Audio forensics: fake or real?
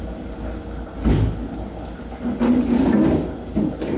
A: real